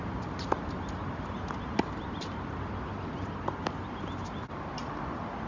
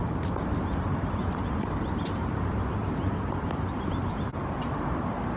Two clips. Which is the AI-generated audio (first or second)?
second